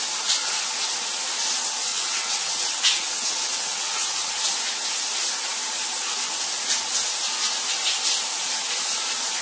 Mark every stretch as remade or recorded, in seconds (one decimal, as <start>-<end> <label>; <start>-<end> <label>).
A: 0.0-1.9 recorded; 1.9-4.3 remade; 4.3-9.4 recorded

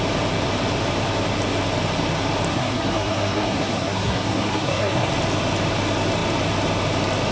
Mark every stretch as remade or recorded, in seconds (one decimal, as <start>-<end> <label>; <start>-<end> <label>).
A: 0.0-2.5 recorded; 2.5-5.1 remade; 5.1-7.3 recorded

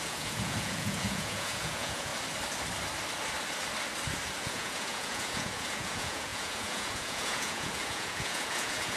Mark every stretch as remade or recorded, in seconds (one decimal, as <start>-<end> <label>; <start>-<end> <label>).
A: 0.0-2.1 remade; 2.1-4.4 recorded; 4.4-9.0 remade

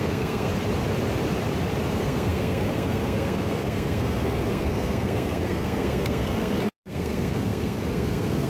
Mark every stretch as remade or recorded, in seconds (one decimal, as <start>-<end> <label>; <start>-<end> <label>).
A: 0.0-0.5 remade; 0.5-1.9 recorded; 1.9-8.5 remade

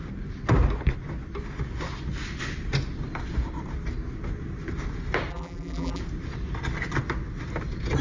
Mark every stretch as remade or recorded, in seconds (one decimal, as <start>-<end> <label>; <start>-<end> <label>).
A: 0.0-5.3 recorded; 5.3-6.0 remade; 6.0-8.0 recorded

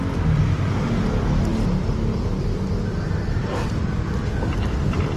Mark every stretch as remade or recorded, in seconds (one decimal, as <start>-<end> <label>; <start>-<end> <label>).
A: 0.0-5.2 recorded

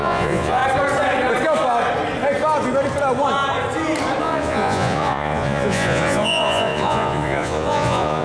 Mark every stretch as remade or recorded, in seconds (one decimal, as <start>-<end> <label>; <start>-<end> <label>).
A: 0.0-0.6 remade; 0.6-4.2 recorded; 4.2-8.2 remade